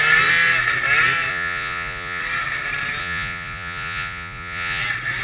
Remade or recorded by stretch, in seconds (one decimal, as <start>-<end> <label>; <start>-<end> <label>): 0.0-1.3 recorded; 1.3-2.2 remade; 2.2-3.0 recorded; 3.0-4.8 remade; 4.8-5.2 recorded

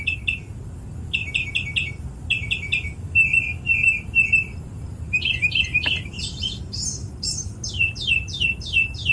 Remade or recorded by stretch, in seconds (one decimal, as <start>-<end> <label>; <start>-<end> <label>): 0.0-9.1 recorded